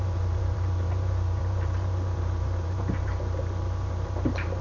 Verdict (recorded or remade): remade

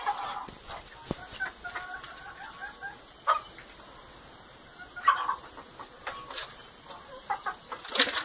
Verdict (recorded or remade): recorded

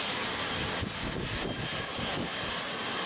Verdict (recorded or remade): recorded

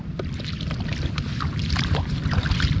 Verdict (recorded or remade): recorded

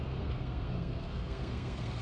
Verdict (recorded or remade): remade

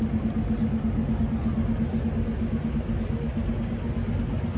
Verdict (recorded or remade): recorded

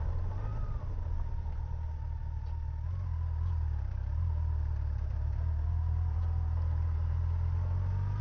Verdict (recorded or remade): recorded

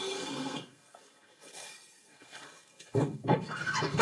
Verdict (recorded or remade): remade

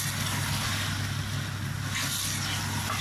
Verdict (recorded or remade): recorded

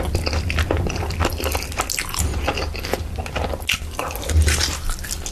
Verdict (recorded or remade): recorded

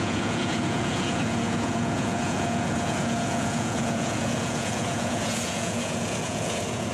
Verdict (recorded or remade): remade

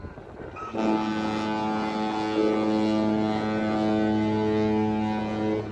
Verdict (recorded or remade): recorded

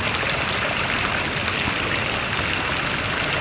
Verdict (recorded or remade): recorded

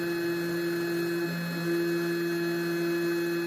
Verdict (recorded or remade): recorded